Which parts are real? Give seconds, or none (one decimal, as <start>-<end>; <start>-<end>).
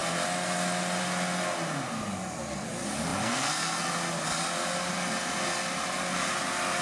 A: 0.0-3.2; 3.8-6.8